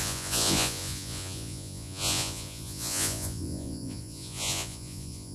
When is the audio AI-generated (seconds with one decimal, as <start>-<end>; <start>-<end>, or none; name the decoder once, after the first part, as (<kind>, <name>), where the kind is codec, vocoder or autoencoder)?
0.0-5.3 (vocoder, Vocos)